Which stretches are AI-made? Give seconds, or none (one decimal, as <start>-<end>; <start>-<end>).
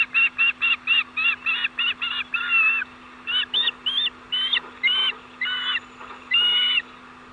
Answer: none